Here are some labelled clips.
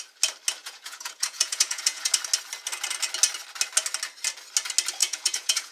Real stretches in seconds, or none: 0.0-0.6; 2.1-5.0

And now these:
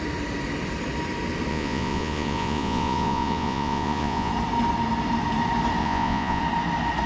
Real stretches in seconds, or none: 0.0-1.5; 4.3-5.8; 6.4-7.1

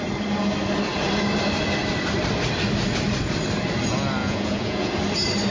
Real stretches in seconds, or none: 0.0-4.2; 4.9-5.5

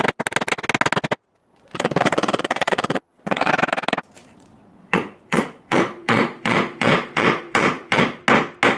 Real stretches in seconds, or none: 0.0-1.4; 3.5-4.2; 8.2-8.8

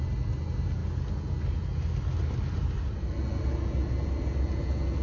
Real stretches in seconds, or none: 0.0-5.0

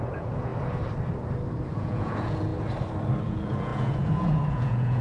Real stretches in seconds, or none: 0.5-1.7; 2.5-3.2

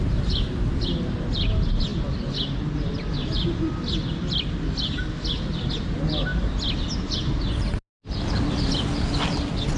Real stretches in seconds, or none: 0.0-9.8

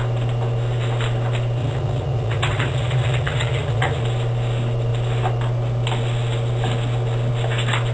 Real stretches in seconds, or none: 0.0-1.6; 4.0-7.9